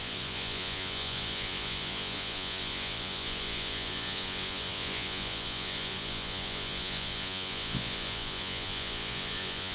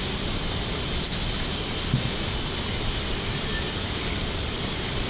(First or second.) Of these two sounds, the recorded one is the second